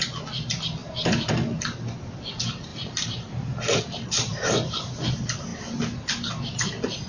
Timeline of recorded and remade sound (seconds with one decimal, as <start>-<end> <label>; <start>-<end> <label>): 0.0-0.8 recorded; 0.8-1.3 remade; 1.3-2.7 recorded; 2.7-3.8 remade; 3.8-4.3 recorded; 4.3-4.9 remade; 4.9-7.1 recorded